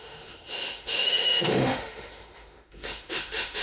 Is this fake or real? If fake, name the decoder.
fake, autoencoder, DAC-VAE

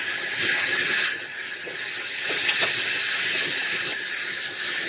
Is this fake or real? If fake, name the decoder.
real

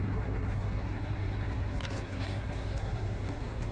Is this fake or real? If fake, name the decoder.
fake, codec, SNAC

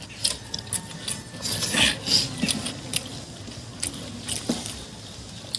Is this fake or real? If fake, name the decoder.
real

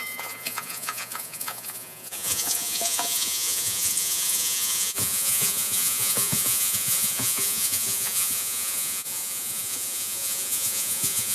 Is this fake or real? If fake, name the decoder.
fake, vocoder, Vocos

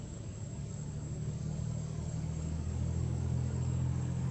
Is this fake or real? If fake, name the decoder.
fake, codec, DAC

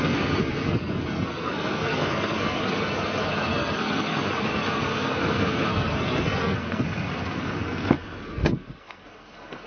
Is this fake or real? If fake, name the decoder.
fake, codec, SNAC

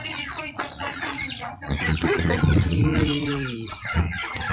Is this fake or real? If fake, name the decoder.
fake, vocoder, Vocos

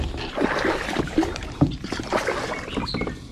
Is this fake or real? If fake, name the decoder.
real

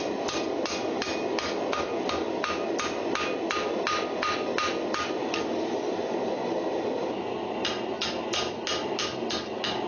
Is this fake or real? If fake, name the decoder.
real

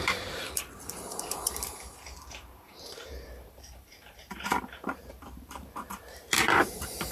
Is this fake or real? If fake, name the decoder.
fake, vocoder, BigVGAN v2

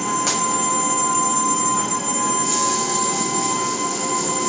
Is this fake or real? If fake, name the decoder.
real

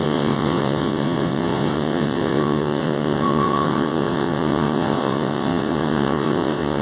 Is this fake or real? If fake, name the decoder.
fake, vocoder, WaveNeXt